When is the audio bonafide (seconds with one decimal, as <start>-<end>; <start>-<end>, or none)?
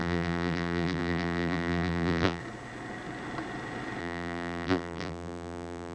2.4-4.0